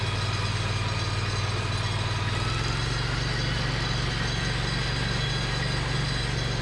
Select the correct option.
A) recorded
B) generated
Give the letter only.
A